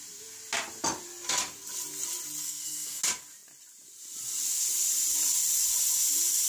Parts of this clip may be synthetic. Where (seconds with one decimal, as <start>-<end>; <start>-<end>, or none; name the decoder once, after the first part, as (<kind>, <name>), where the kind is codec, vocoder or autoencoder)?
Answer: 2.4-3.0 (codec, SNAC)